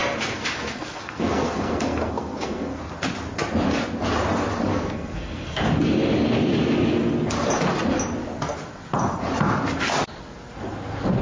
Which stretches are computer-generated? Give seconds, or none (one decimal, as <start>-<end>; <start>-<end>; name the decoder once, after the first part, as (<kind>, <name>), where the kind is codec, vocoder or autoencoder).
0.0-2.8 (codec, SNAC); 4.7-5.6